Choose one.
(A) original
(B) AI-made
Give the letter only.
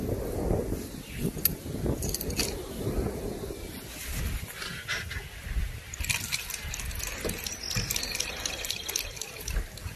A